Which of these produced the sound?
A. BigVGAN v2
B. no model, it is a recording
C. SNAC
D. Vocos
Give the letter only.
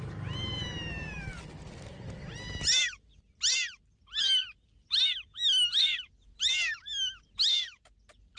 B